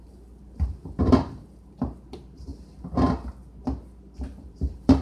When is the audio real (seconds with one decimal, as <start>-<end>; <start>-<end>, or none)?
2.5-4.5